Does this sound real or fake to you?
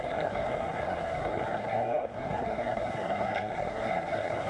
fake